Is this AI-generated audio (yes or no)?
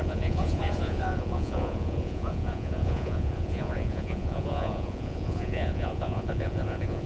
yes